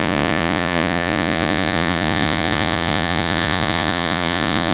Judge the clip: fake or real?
fake